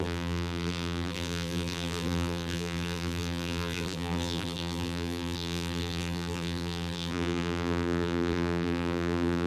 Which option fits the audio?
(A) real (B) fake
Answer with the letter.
B